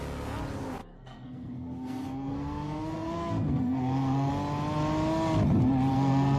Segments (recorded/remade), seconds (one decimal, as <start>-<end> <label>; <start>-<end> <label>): 0.0-0.8 recorded; 0.8-4.3 remade; 4.3-5.9 recorded; 5.9-6.4 remade